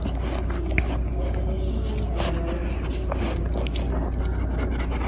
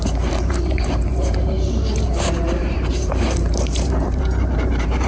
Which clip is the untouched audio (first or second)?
first